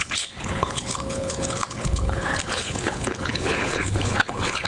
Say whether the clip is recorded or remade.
remade